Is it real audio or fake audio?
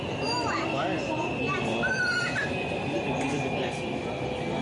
real